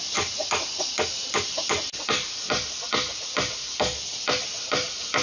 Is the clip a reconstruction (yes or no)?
no